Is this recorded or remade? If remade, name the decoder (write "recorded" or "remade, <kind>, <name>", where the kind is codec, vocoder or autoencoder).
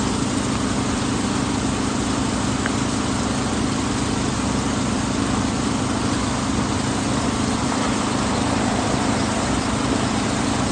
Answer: recorded